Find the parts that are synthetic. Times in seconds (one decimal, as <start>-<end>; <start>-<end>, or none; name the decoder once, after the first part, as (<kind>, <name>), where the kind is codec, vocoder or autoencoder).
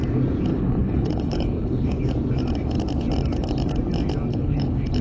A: 0.5-2.0 (codec, HILCodec); 4.3-5.0